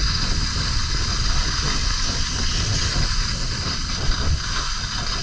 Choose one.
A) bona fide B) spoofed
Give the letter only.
A